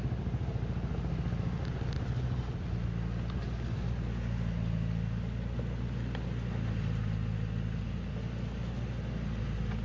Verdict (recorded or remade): recorded